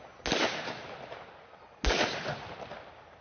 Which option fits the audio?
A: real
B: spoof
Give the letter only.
A